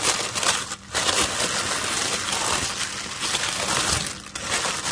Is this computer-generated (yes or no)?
no